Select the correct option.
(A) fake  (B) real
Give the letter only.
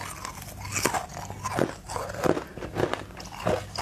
B